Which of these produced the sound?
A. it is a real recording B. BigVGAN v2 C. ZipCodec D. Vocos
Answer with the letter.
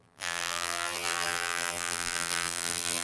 B